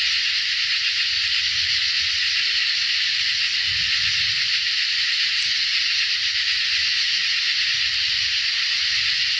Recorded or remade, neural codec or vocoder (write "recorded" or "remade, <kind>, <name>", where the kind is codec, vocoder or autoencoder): recorded